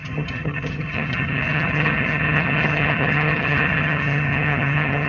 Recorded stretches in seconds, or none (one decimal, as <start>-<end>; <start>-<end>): none